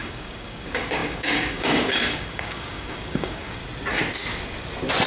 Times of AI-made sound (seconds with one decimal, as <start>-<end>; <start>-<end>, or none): 0.0-3.6